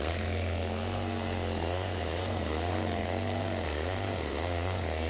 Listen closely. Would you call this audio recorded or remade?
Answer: remade